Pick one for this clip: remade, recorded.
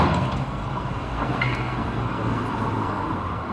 remade